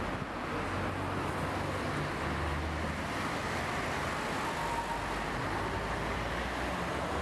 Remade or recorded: recorded